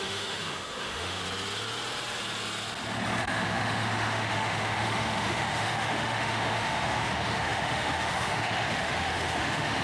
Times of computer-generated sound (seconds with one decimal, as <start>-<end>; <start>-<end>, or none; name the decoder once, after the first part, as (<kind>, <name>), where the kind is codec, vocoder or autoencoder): 0.0-1.2 (autoencoder, DAC-VAE); 3.2-9.8